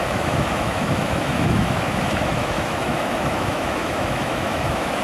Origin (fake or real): fake